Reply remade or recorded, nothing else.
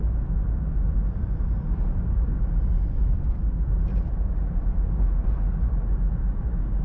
recorded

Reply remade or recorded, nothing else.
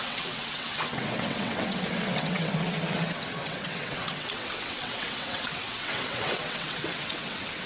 remade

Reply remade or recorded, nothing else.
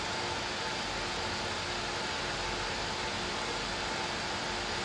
recorded